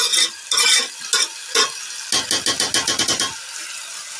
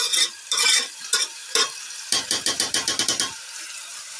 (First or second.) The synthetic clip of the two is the second